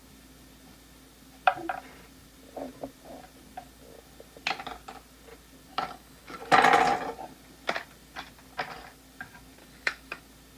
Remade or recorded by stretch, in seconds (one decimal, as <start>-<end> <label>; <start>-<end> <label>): 0.0-5.7 recorded; 5.7-6.4 remade; 6.4-9.6 recorded; 9.6-10.2 remade; 10.2-10.6 recorded